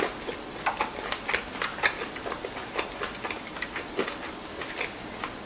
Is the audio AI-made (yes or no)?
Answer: no